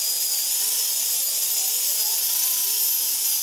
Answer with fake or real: real